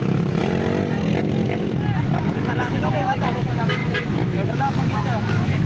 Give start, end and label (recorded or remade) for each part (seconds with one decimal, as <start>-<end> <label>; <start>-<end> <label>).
0.0-0.4 remade; 0.4-2.2 recorded; 2.2-5.7 remade